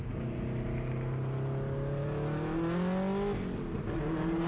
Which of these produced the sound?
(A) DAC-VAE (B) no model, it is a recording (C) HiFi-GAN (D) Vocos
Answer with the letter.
B